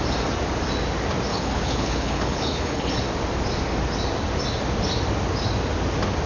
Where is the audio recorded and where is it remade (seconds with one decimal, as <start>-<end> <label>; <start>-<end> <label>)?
0.0-1.3 recorded; 1.3-3.0 remade; 3.0-6.3 recorded